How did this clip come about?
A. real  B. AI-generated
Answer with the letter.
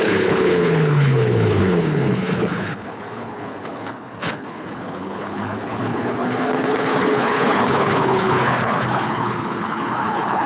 B